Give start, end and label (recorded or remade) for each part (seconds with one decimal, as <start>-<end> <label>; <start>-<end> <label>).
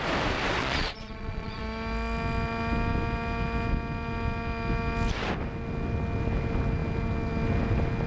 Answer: 0.0-0.6 recorded; 0.6-1.6 remade; 1.6-8.1 recorded